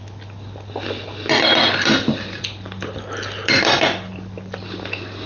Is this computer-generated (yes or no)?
no